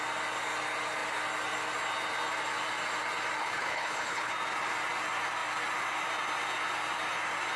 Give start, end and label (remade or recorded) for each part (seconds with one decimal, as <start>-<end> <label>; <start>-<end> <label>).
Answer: 0.0-3.4 recorded; 3.4-4.3 remade; 4.3-7.6 recorded